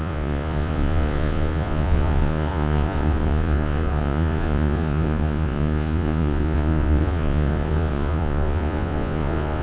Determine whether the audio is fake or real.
fake